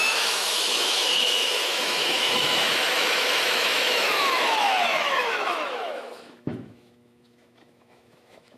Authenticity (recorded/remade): remade